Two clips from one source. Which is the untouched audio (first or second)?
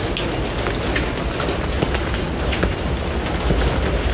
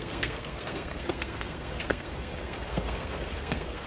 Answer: first